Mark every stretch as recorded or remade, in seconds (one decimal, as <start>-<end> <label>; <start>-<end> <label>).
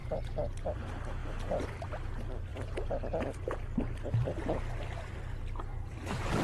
0.0-6.4 recorded